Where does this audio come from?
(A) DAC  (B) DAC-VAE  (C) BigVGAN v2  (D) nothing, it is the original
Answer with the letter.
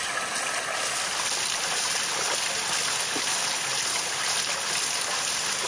D